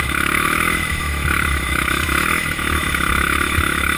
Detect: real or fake fake